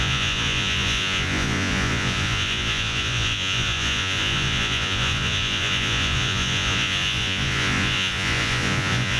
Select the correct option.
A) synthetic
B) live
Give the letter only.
A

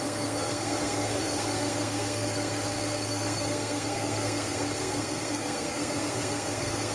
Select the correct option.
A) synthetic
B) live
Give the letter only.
A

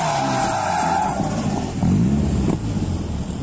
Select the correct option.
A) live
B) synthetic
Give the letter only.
A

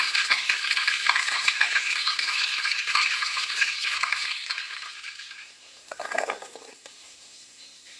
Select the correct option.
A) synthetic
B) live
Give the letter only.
A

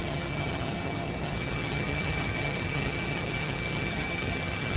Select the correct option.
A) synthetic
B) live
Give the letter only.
A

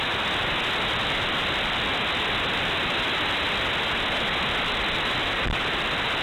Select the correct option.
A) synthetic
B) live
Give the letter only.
B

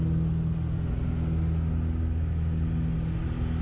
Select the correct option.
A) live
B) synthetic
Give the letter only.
A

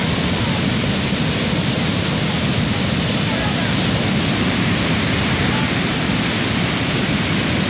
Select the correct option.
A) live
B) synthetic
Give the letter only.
A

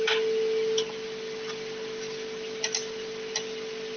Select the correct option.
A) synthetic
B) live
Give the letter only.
B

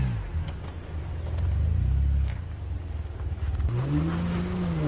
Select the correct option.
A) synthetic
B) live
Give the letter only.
B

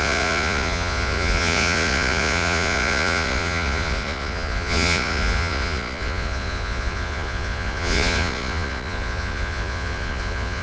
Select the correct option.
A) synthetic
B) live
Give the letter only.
A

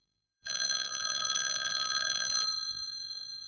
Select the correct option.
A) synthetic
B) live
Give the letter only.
A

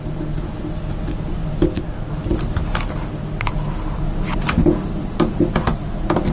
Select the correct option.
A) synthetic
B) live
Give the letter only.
B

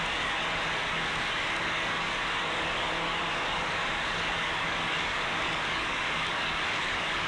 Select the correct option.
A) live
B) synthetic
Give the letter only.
B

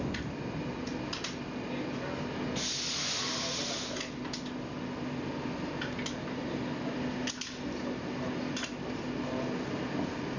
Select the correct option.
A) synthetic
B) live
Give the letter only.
B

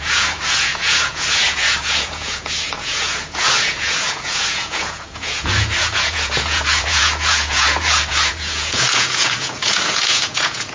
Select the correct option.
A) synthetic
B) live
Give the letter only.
A